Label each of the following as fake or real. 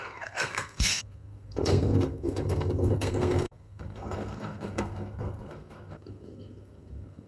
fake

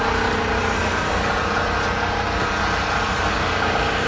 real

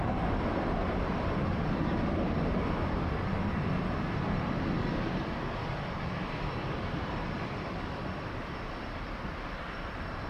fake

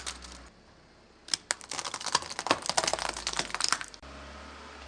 real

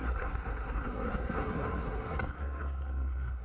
fake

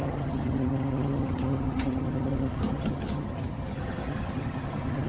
fake